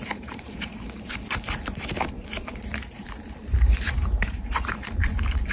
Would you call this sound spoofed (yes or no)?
yes